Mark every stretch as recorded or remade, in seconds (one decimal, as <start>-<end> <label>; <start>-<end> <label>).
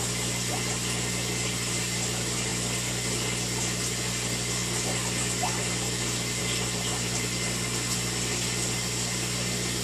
0.0-9.8 recorded